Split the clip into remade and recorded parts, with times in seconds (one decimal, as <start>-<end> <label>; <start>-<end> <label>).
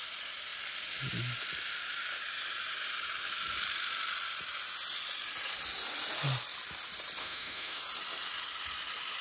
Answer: 0.0-7.2 recorded; 7.2-7.8 remade; 7.8-9.2 recorded